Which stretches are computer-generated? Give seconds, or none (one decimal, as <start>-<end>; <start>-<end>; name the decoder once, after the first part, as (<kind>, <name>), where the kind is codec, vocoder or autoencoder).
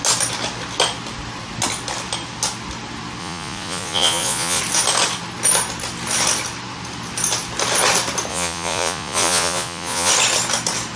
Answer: 3.2-4.6 (vocoder, Vocos); 8.3-10.1